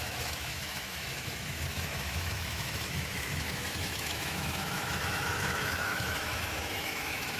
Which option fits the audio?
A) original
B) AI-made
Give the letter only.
B